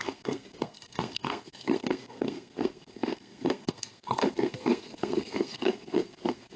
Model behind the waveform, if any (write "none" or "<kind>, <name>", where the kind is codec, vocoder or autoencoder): codec, SNAC